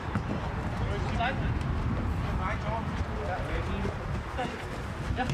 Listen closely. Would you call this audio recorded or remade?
recorded